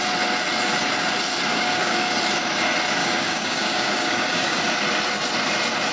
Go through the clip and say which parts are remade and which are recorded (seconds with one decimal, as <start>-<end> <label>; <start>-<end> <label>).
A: 0.0-1.5 recorded; 1.5-2.1 remade; 2.1-3.0 recorded; 3.0-4.6 remade; 4.6-5.9 recorded